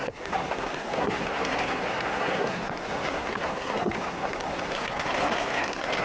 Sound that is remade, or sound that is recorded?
remade